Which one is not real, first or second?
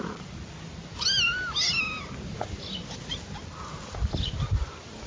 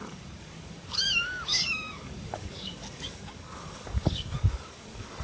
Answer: second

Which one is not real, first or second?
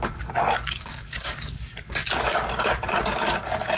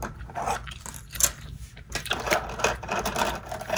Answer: first